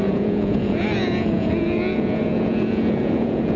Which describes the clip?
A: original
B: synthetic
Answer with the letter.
B